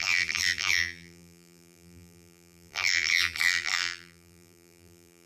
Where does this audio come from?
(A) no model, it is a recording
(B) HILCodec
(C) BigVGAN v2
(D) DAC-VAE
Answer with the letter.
C